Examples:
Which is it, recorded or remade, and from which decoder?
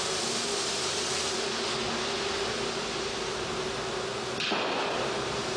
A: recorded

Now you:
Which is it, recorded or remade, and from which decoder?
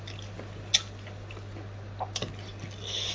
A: recorded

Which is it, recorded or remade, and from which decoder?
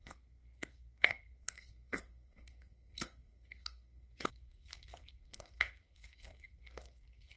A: remade, codec, SNAC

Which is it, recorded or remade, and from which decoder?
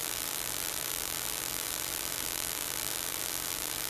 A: remade, vocoder, BigVGAN v2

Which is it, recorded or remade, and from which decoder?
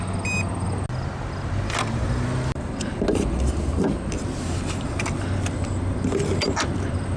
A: recorded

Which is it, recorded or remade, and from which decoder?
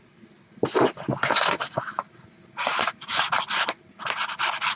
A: recorded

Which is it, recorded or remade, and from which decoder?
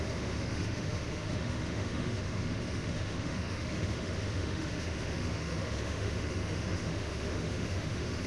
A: remade, autoencoder, DAC-VAE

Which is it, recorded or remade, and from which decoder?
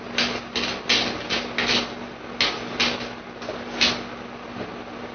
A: recorded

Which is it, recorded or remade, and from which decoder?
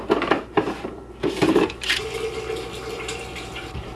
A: remade, vocoder, BigVGAN v2